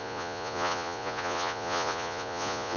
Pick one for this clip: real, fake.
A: fake